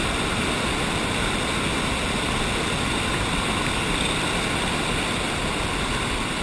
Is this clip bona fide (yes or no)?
yes